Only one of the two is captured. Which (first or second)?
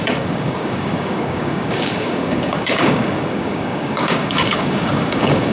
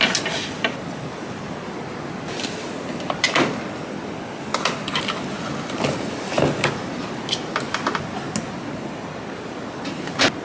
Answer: second